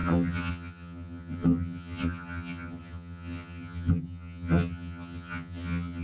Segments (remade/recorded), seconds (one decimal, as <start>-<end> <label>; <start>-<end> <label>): 0.0-6.0 remade